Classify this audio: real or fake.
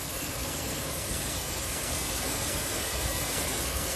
fake